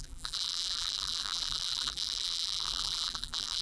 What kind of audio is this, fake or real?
fake